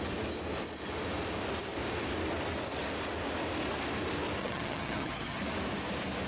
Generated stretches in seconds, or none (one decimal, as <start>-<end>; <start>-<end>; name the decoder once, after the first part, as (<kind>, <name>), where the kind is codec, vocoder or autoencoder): 4.4-5.4 (vocoder, HiFi-GAN)